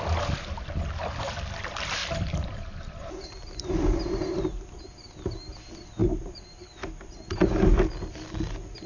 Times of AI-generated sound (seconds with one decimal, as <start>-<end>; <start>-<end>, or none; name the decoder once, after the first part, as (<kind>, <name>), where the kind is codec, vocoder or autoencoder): 2.0-4.8 (vocoder, BigVGAN v2); 6.0-7.3